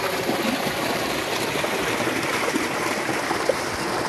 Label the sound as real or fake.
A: real